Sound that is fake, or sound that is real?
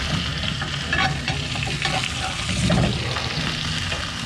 real